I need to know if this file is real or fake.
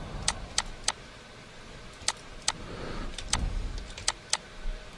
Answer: real